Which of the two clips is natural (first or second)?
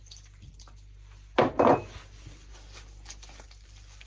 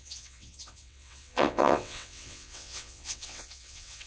first